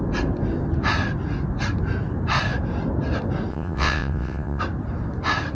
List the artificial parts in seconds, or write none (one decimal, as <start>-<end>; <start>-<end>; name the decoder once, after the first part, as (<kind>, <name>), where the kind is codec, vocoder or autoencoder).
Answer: 3.5-4.6 (vocoder, WaveNeXt)